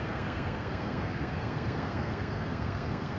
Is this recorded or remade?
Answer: remade